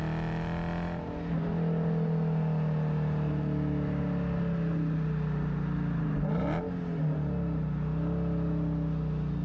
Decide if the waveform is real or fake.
real